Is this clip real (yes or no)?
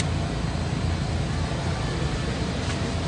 yes